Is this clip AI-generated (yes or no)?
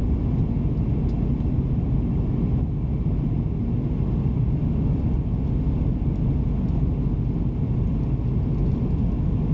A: no